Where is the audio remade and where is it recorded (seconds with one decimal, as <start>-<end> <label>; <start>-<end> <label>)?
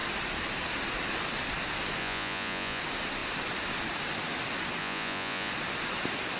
0.0-2.0 recorded; 2.0-2.8 remade; 2.8-4.8 recorded; 4.8-5.5 remade; 5.5-6.4 recorded